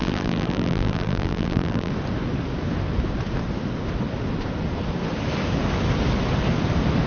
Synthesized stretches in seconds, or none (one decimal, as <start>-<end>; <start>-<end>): 0.0-1.9

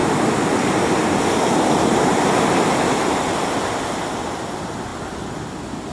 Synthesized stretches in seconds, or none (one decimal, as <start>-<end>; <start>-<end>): 0.0-3.5

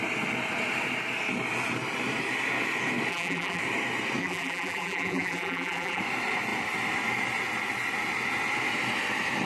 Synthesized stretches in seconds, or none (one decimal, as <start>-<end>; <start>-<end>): 3.1-3.6; 4.2-6.0

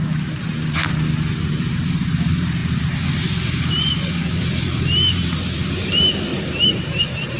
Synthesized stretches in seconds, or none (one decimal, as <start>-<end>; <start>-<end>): 0.0-0.8; 1.5-7.4

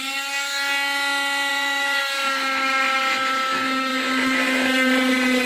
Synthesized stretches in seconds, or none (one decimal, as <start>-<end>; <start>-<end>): 1.5-2.0; 3.9-5.1

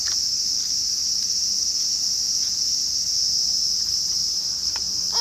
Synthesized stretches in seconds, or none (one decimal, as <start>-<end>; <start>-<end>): 0.0-1.0; 4.1-5.2

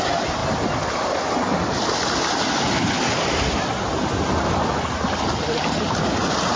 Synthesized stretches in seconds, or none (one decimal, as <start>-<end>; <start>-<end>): none

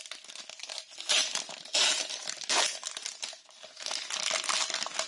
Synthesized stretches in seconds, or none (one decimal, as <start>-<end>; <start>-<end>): 0.6-2.2